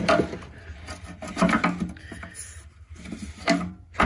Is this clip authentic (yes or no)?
yes